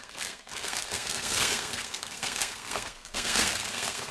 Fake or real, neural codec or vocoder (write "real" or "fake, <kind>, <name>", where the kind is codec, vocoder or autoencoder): fake, codec, SNAC